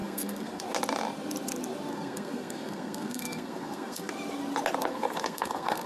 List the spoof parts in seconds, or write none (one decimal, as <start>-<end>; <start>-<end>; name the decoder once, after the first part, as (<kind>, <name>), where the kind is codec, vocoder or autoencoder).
0.0-0.6 (codec, SNAC); 1.9-4.1; 4.9-5.9